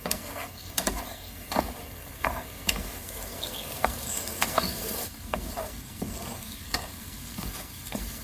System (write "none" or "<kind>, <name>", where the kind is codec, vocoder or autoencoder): codec, SNAC